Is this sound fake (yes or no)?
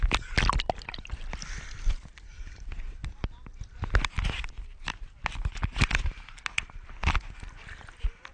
no